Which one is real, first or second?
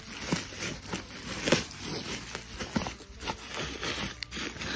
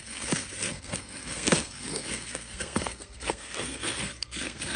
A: first